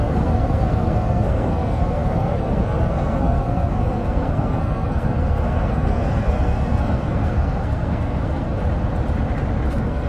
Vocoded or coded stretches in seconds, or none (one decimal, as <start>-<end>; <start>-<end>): 0.0-8.6; 9.7-10.1